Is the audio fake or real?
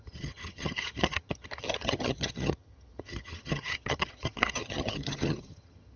fake